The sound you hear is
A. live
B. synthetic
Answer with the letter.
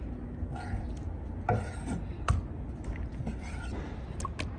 A